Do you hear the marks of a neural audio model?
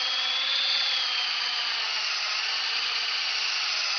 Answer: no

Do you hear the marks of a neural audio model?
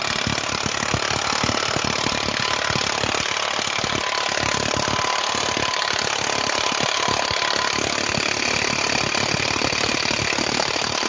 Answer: no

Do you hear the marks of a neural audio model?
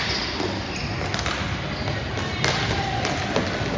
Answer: no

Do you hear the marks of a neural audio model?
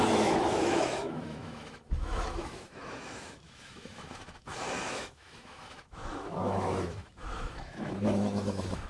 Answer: yes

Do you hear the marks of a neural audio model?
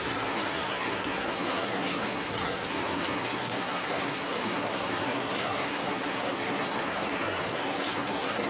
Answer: yes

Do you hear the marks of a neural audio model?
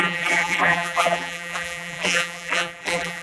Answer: yes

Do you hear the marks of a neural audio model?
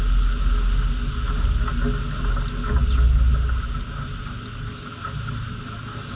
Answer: no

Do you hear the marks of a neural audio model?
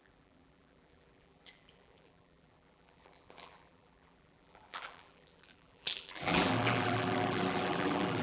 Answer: yes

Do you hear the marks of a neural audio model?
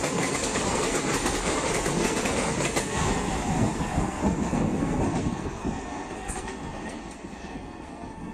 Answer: yes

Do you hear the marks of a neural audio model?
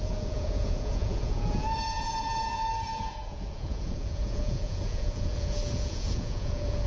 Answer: yes